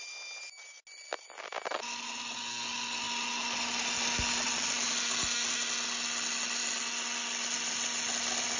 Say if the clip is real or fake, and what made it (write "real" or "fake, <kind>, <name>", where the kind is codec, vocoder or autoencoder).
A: real